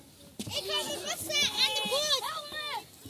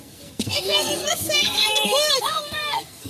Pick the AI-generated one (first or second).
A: second